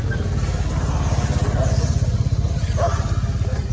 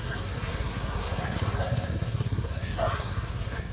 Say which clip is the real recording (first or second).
first